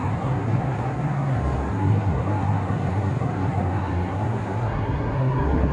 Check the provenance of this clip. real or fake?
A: fake